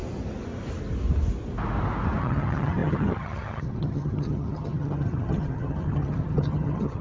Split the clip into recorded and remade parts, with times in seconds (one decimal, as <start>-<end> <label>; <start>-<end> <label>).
0.0-2.2 recorded; 2.2-7.0 remade